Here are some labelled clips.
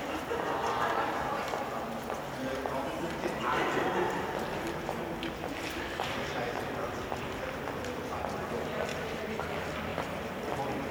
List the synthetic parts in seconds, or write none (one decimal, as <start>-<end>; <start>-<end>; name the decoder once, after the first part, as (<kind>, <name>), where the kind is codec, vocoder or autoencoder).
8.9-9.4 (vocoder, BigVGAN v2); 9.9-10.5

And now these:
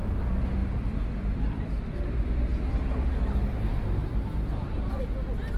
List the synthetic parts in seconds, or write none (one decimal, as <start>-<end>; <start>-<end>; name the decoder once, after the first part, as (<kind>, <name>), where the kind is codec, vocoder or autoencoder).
2.5-3.2 (vocoder, BigVGAN v2); 4.0-4.9

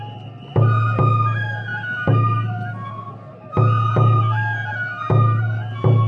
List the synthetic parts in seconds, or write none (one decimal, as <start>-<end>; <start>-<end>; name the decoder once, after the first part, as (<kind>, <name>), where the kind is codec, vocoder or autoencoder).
none

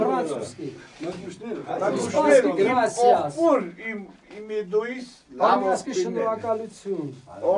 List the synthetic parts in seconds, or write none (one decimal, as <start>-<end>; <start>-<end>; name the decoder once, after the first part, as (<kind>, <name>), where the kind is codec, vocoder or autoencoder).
none

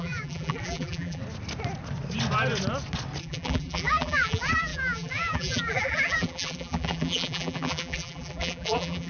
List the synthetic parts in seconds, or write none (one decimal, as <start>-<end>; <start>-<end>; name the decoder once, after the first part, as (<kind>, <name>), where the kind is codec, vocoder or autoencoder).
0.0-1.2 (vocoder, BigVGAN v2); 3.2-9.1